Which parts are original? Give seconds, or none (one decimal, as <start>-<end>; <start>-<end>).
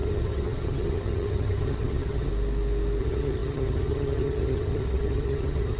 2.3-3.0